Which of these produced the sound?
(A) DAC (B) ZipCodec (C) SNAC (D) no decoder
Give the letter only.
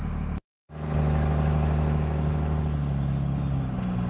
D